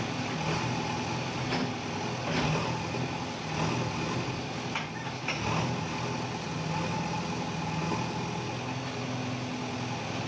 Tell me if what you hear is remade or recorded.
recorded